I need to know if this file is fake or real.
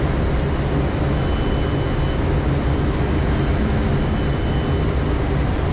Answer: real